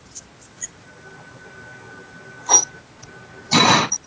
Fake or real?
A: real